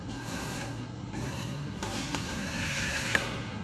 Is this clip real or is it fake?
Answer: fake